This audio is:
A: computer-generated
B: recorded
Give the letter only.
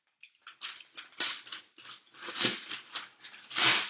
B